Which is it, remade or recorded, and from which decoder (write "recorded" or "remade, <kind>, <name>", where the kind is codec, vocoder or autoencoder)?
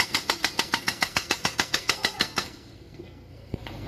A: remade, codec, SNAC